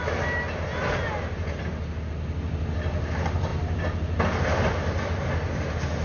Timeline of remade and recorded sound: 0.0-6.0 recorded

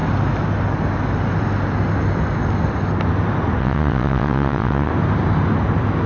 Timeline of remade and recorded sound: 0.0-3.6 recorded; 3.6-4.9 remade; 4.9-6.1 recorded